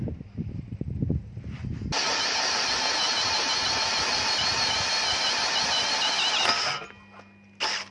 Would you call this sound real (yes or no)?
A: yes